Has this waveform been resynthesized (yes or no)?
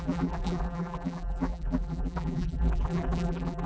yes